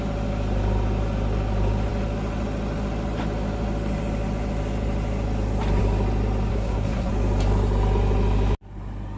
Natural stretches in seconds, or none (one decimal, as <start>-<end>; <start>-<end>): 0.0-6.5; 7.1-9.2